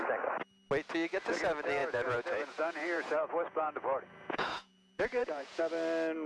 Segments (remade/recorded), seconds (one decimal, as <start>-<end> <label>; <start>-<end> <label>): 0.0-1.8 recorded; 1.8-5.6 remade; 5.6-6.3 recorded